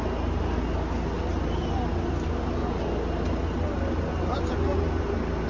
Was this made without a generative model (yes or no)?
yes